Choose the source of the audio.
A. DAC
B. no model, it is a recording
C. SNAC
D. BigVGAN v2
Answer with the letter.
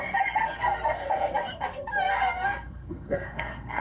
C